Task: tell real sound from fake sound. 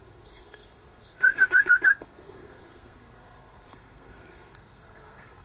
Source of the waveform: fake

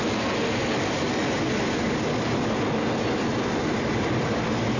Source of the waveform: real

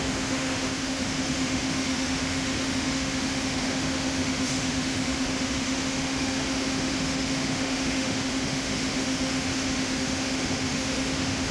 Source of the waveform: fake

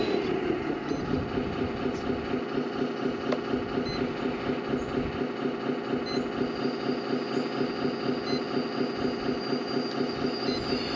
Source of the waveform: real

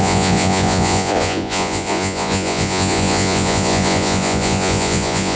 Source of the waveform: fake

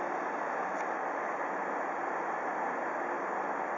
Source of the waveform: real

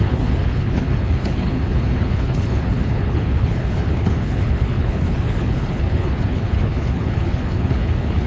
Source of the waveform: fake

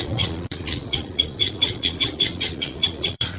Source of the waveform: fake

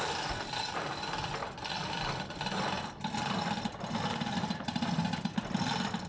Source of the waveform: real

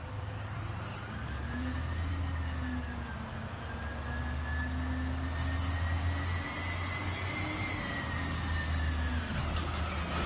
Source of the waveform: real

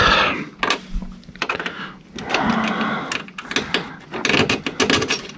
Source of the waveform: real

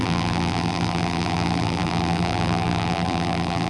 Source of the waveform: fake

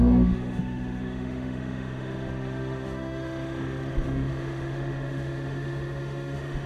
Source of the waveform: fake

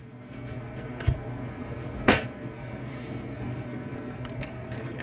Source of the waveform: fake